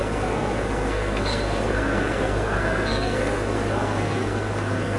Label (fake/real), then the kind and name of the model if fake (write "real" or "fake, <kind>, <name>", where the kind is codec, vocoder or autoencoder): fake, codec, SNAC